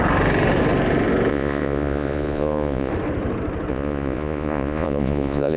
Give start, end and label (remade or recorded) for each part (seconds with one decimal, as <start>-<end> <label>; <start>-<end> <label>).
0.0-1.3 recorded; 1.3-2.9 remade; 2.9-3.7 recorded; 3.7-5.6 remade